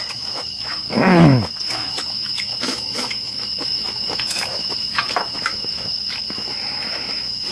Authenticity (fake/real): fake